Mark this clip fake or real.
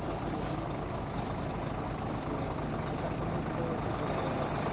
real